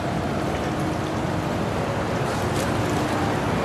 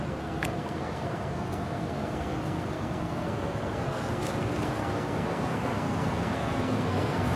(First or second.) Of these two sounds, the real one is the first